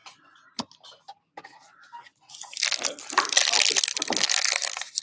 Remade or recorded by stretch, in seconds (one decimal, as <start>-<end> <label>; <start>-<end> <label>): 0.0-5.0 recorded